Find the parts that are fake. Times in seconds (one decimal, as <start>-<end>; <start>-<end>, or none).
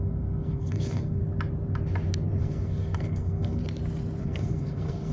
0.0-1.2; 2.4-3.6; 4.2-5.1